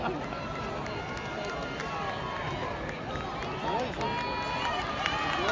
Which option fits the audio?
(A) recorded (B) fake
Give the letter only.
A